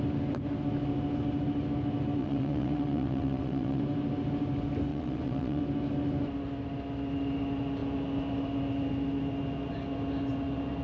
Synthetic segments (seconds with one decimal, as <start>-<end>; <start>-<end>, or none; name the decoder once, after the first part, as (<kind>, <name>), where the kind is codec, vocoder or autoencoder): 2.2-3.8 (vocoder, WaveNeXt); 4.9-5.6